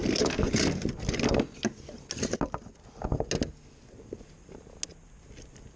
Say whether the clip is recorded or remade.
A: recorded